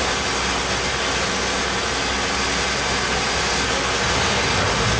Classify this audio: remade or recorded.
recorded